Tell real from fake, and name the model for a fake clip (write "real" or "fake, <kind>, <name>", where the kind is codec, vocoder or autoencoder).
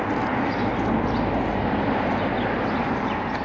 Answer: real